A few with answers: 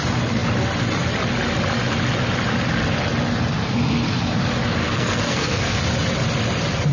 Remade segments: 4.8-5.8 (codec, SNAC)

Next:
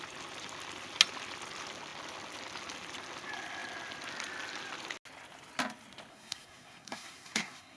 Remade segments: 6.1-7.8 (codec, SNAC)